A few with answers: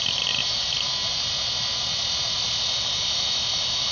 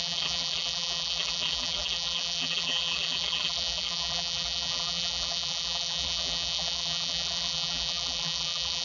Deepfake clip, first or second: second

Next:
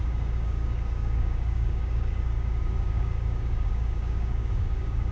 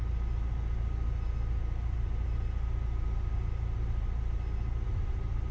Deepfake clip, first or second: first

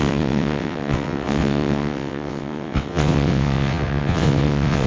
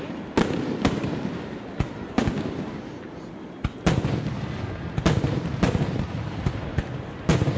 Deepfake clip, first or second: first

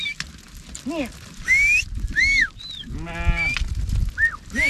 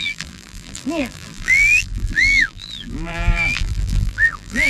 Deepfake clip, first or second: second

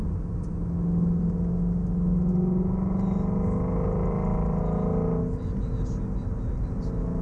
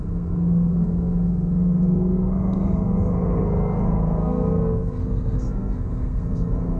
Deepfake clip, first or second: second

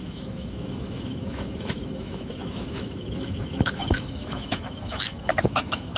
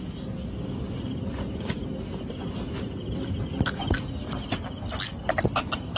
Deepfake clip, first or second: first